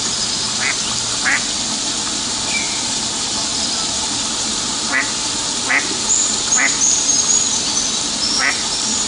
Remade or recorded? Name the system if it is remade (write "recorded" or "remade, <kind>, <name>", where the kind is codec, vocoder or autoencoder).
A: recorded